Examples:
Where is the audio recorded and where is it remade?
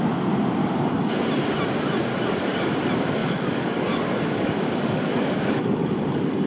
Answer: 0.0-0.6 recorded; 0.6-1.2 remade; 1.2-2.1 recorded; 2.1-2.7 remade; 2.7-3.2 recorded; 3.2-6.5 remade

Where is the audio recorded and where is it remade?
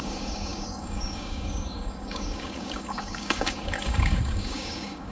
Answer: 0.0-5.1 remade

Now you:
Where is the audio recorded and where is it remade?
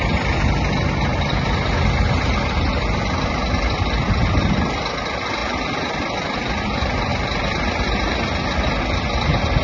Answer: 0.0-9.6 recorded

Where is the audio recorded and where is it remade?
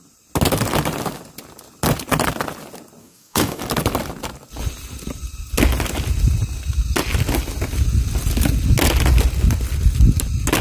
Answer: 0.0-3.0 recorded; 3.0-3.6 remade; 3.6-10.6 recorded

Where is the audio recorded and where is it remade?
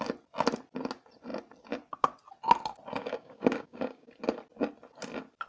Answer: 0.0-3.0 recorded; 3.0-4.1 remade; 4.1-5.5 recorded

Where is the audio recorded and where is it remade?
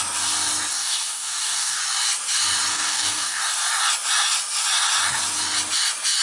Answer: 0.0-0.7 recorded; 0.7-1.8 remade; 1.8-2.7 recorded; 2.7-3.4 remade; 3.4-6.2 recorded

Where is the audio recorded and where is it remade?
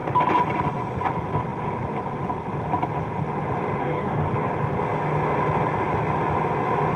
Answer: 0.0-3.8 recorded; 3.8-4.3 remade; 4.3-7.0 recorded